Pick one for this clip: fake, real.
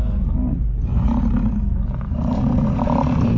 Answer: fake